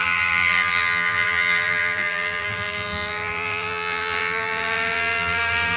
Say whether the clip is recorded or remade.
remade